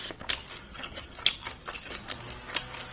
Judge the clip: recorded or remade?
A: recorded